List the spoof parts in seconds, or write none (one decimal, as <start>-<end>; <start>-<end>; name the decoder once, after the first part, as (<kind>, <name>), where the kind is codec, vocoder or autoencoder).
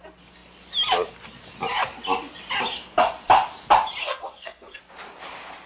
4.0-4.8 (codec, SNAC)